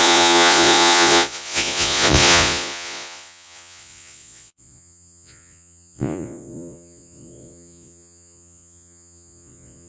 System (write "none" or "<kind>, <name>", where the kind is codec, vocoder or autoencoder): vocoder, Vocos